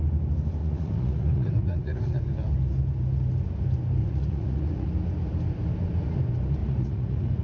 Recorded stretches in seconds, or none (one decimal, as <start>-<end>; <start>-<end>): 0.0-0.6; 2.2-4.0; 4.9-6.6